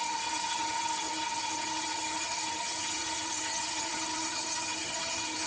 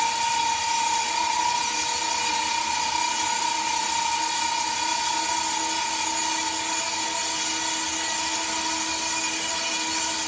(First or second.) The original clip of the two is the second